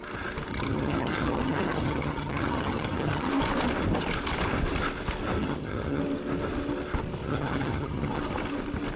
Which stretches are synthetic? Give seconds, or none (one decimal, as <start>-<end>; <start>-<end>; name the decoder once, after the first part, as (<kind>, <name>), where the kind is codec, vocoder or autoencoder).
0.5-3.3 (vocoder, HiFi-GAN); 5.4-6.0; 7.2-8.2